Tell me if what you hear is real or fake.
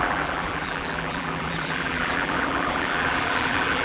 fake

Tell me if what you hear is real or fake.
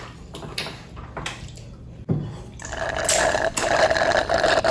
real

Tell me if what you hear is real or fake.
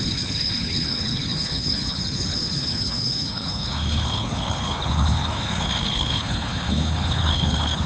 fake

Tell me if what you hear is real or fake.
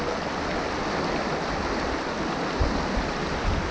real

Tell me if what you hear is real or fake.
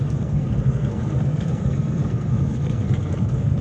fake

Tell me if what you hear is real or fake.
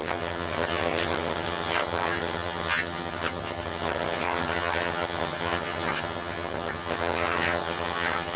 fake